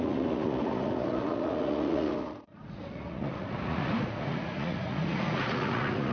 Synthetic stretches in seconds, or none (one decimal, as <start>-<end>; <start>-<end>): 0.0-6.1